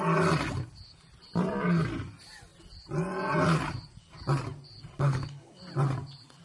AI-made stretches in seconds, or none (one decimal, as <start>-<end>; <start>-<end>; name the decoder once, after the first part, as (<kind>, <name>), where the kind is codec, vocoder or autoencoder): 5.0-5.6 (codec, HILCodec)